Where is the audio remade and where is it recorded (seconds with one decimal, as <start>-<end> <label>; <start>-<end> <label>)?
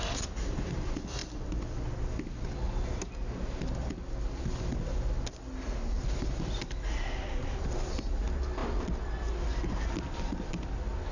0.0-11.1 recorded